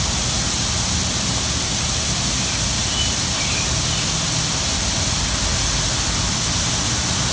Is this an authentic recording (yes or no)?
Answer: yes